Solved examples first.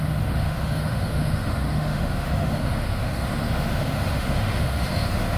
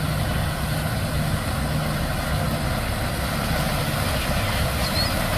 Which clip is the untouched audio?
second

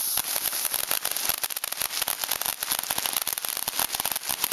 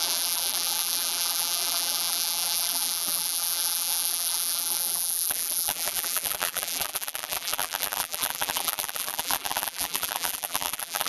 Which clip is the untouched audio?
first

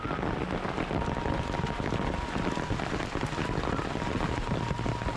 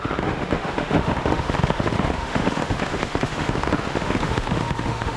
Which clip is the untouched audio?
first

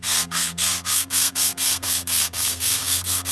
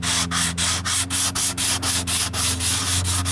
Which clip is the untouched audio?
second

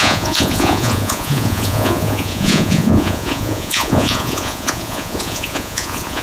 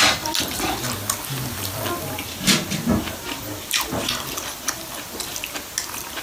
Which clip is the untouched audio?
second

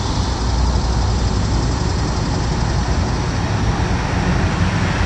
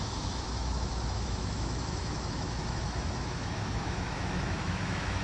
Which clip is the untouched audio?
first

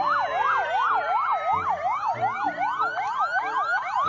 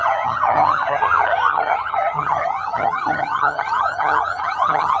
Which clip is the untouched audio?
first